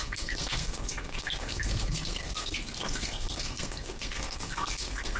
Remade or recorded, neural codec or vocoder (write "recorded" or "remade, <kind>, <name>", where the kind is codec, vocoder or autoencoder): remade, codec, SNAC